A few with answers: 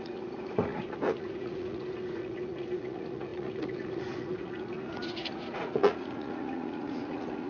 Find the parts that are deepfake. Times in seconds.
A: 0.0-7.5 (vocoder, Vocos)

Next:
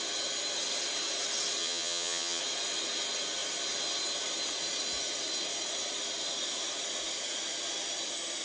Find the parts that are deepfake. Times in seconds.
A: 1.6-2.4 (vocoder, HiFi-GAN)

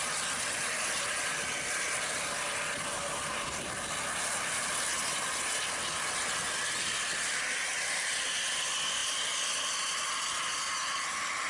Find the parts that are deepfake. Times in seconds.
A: none